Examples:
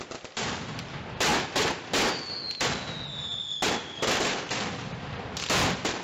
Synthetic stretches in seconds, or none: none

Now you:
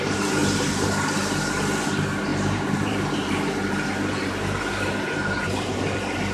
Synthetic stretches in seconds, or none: 2.3-5.4

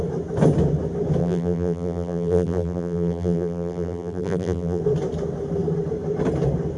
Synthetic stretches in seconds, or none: 1.2-4.8

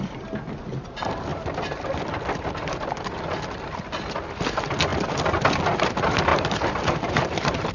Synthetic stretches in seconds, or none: 6.3-7.7